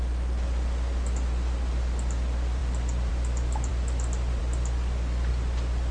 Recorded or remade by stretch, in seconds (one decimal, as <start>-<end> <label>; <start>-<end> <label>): 0.0-5.9 recorded